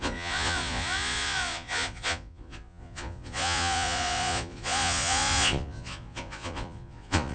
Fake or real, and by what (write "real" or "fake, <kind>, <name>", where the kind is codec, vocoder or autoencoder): fake, vocoder, Vocos